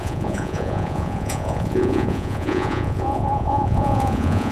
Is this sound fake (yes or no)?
yes